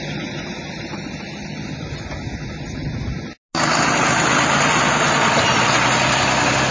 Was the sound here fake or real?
real